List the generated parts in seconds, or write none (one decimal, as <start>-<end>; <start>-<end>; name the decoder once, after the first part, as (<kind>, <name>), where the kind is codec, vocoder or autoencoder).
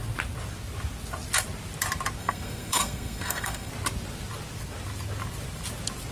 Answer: 2.2-3.7 (codec, SNAC)